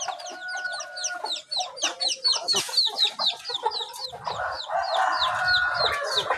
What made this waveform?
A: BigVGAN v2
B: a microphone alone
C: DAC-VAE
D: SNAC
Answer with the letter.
B